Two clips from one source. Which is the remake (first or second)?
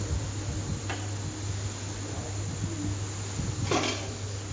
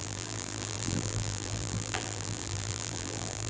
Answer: second